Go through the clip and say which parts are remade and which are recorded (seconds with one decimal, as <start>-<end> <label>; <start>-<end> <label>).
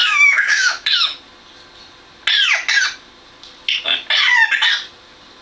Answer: 0.0-1.2 remade; 1.2-5.4 recorded